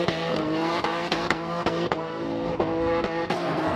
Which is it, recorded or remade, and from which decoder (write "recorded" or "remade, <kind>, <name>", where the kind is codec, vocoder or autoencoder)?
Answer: remade, codec, SNAC